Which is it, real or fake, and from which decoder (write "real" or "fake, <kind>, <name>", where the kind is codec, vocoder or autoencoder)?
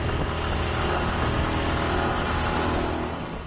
real